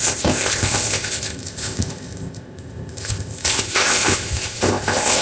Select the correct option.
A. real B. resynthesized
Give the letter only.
B